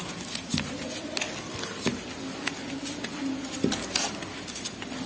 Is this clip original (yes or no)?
yes